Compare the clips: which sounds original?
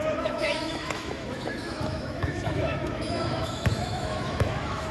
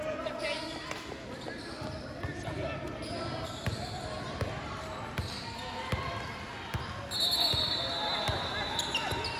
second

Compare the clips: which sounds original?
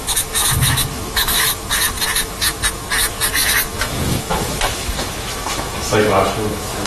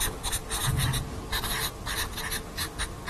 second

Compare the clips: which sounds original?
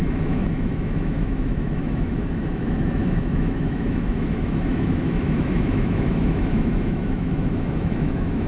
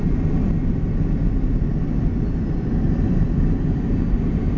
second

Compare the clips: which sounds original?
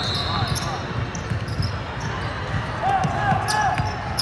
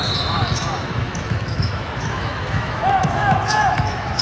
first